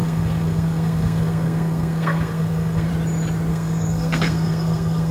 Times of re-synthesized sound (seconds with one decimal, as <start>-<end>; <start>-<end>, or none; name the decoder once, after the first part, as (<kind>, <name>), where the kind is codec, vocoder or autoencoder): 0.0-2.9 (codec, SNAC); 3.5-5.1